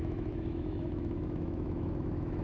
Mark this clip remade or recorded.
remade